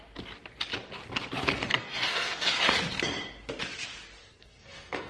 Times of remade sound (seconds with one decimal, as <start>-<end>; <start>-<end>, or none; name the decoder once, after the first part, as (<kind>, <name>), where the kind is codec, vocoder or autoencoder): 1.7-2.5 (codec, SNAC); 4.2-5.1